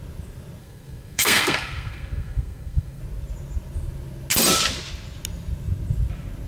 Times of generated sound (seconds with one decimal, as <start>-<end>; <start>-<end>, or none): 0.6-3.0